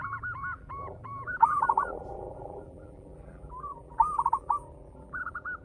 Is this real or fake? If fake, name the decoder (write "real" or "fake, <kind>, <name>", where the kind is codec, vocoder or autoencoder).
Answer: fake, vocoder, BigVGAN v2